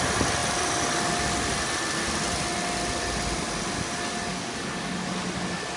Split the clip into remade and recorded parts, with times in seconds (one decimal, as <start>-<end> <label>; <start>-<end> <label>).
0.0-4.3 recorded; 4.3-5.1 remade; 5.1-5.8 recorded